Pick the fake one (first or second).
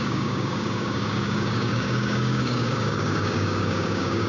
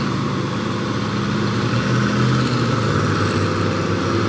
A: first